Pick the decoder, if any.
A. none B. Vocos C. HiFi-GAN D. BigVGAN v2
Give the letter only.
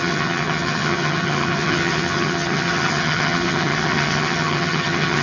C